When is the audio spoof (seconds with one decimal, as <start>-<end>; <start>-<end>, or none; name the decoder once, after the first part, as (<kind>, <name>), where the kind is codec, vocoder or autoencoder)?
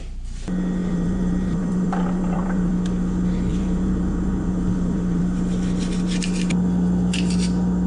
0.8-2.7 (vocoder, BigVGAN v2); 3.5-5.2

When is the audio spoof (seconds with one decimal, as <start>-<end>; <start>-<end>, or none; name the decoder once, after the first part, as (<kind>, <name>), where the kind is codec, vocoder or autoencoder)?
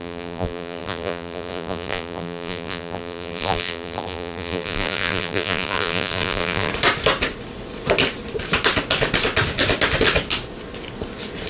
0.0-6.7 (vocoder, BigVGAN v2)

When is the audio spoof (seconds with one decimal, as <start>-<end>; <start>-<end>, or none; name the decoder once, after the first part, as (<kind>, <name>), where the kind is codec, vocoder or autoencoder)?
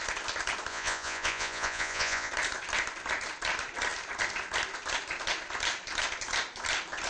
0.7-2.3 (vocoder, Vocos)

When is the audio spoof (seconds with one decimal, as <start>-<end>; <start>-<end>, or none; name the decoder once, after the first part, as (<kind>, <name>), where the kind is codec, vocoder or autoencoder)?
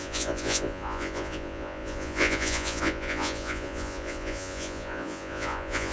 0.0-5.9 (vocoder, Vocos)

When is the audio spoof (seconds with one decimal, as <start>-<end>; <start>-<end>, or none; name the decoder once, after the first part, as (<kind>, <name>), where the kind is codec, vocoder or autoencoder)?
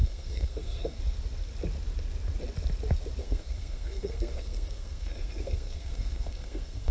0.0-1.0 (codec, SNAC); 3.2-6.9